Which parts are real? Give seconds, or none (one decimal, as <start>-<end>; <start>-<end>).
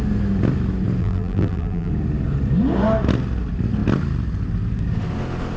0.0-1.0; 1.9-5.6